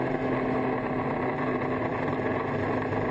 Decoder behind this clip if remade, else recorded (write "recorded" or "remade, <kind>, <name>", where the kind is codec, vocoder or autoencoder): recorded